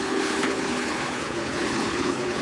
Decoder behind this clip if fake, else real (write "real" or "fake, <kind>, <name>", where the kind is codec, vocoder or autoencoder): fake, codec, HILCodec